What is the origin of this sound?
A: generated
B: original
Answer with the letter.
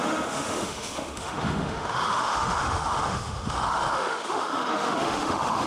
A